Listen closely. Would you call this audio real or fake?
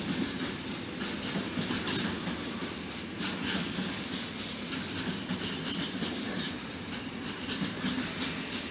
real